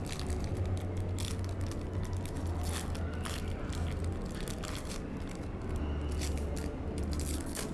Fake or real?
real